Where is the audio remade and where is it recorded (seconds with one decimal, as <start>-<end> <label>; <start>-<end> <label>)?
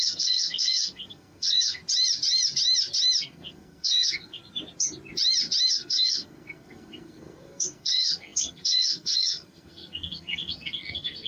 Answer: 0.0-1.8 remade; 1.8-3.2 recorded; 3.2-4.4 remade; 4.4-5.7 recorded; 5.7-11.3 remade